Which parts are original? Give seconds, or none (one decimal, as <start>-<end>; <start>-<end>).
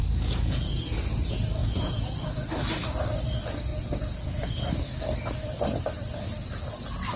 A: 0.8-1.6; 2.2-3.7; 4.5-7.2